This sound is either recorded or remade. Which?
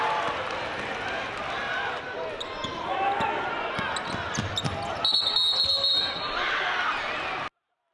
recorded